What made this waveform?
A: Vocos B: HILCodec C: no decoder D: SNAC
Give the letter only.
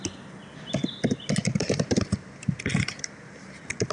C